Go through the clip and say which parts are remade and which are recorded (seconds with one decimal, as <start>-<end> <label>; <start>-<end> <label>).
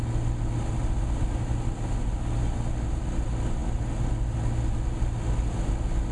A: 0.0-6.1 recorded